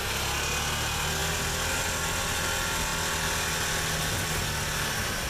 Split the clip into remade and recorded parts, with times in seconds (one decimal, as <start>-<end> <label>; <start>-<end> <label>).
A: 0.0-5.3 recorded